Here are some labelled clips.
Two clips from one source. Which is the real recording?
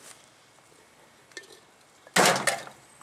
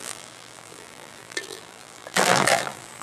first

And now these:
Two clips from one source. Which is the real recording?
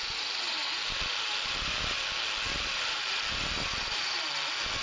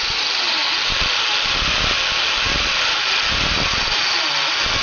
first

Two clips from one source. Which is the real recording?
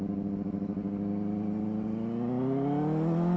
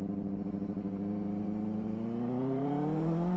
first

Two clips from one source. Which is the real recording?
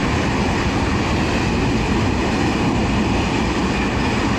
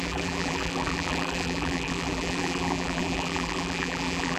first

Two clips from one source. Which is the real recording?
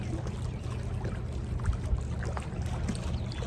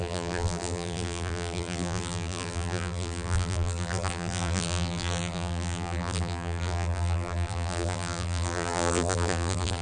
first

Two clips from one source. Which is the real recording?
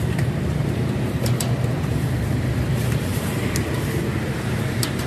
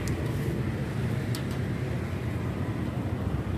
second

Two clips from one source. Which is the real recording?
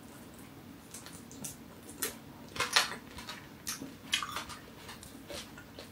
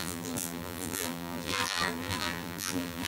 first